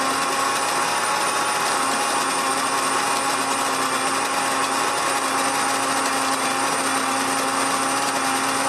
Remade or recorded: recorded